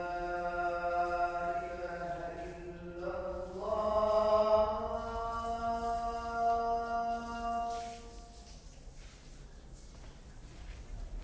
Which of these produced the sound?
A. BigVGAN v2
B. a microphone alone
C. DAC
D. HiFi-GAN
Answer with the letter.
B